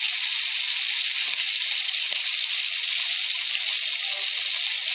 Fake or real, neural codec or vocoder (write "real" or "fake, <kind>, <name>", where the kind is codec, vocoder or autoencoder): real